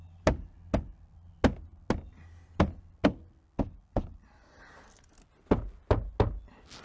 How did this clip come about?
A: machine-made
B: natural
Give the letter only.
B